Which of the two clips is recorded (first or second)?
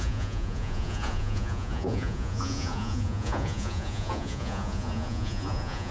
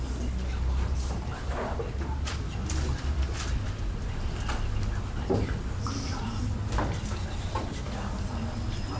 second